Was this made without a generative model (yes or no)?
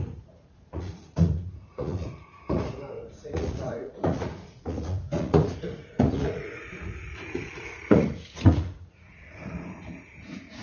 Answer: no